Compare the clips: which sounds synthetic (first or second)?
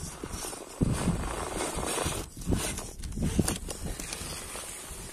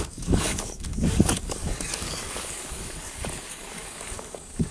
second